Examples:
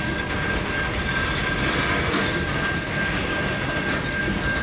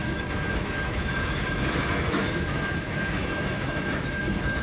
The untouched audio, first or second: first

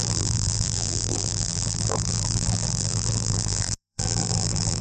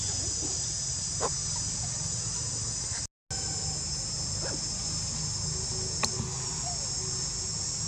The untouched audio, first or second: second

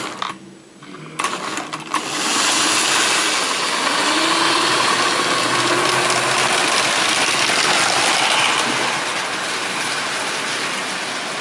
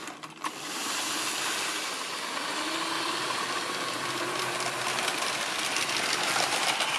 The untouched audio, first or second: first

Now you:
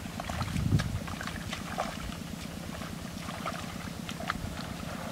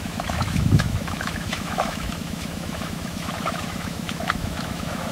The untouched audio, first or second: first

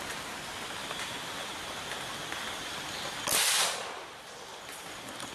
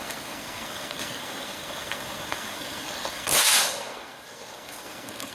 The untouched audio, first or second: first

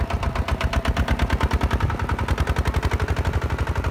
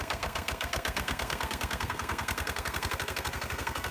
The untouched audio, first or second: first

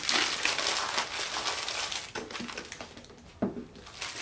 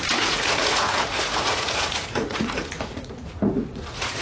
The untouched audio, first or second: first